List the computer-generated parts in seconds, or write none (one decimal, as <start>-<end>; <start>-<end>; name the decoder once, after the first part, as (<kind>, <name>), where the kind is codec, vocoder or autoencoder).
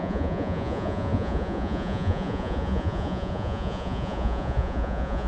0.0-5.3 (vocoder, Vocos)